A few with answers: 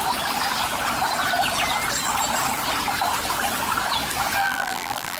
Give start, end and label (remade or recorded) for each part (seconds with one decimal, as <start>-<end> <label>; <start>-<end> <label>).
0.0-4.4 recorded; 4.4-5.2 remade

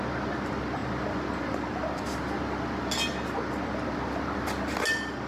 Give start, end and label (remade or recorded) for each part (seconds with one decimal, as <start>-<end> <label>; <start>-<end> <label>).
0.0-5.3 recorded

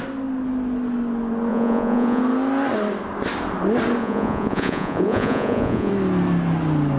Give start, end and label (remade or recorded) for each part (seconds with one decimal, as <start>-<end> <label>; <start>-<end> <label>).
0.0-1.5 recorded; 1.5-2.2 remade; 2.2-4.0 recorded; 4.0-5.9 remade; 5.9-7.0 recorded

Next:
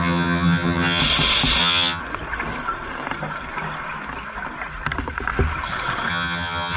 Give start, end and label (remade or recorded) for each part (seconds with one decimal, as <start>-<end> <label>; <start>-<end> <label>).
0.0-1.0 remade; 1.0-1.6 recorded; 1.6-2.0 remade; 2.0-6.1 recorded; 6.1-6.8 remade

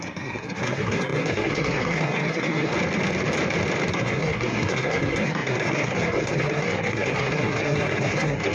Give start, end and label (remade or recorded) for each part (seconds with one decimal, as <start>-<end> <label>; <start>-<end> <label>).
0.0-2.7 remade; 2.7-3.9 recorded; 3.9-8.5 remade

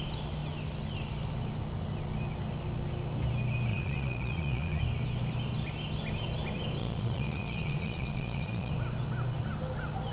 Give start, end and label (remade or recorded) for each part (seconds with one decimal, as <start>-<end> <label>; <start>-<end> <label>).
0.0-3.7 recorded; 3.7-4.8 remade; 4.8-6.8 recorded; 6.8-8.7 remade; 8.7-10.1 recorded

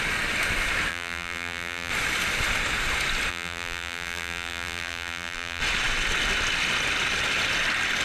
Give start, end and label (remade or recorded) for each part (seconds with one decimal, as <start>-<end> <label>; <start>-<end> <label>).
0.0-0.9 recorded; 0.9-1.9 remade; 1.9-3.3 recorded; 3.3-5.6 remade; 5.6-8.0 recorded

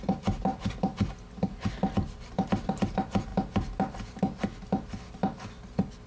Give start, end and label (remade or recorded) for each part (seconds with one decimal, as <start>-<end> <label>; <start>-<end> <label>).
0.0-6.1 recorded